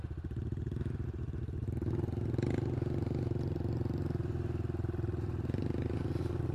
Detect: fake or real real